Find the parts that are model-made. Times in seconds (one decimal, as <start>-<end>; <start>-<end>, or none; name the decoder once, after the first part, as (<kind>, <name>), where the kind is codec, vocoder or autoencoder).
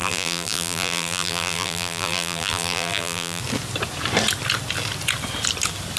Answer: 0.0-3.4 (vocoder, BigVGAN v2)